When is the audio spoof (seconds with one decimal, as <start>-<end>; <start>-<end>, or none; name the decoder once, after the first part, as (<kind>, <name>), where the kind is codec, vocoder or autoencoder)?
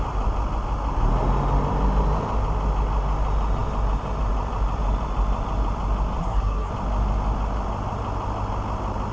6.2-6.7 (codec, SNAC)